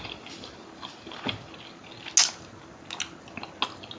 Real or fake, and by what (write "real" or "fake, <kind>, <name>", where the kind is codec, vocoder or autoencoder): real